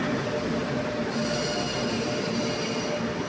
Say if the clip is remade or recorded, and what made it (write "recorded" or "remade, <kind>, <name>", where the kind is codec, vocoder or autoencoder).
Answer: recorded